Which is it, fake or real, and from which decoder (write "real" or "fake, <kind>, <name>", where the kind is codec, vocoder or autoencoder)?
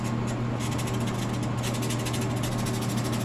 real